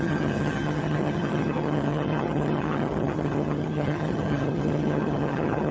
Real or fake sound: fake